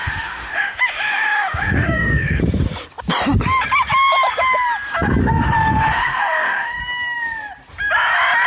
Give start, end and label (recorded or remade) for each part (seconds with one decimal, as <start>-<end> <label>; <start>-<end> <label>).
0.0-2.4 remade; 2.4-5.2 recorded; 5.2-6.8 remade; 6.8-8.5 recorded